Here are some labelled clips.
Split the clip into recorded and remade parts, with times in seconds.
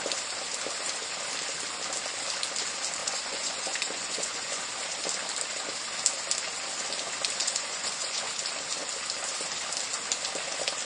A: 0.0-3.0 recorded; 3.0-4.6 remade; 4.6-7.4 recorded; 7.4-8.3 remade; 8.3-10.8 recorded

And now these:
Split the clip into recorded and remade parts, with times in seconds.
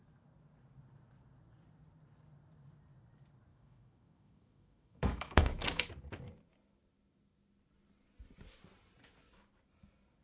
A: 0.0-3.5 recorded; 3.5-5.9 remade; 5.9-10.2 recorded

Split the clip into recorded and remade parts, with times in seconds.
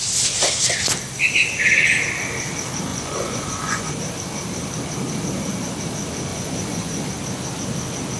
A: 0.0-2.9 recorded; 2.9-3.9 remade; 3.9-6.3 recorded; 6.3-7.1 remade; 7.1-8.2 recorded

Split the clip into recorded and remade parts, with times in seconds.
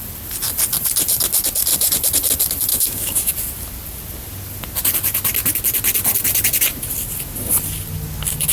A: 0.0-2.7 recorded; 2.7-3.3 remade; 3.3-8.5 recorded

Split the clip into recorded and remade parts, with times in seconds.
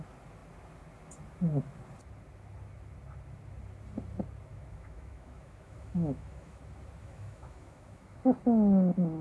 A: 0.0-4.5 recorded; 4.5-6.6 remade; 6.6-7.0 recorded; 7.0-8.2 remade; 8.2-9.2 recorded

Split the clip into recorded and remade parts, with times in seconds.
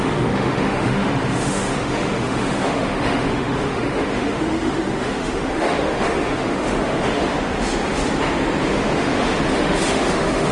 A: 0.0-7.3 remade; 7.3-8.7 recorded; 8.7-10.5 remade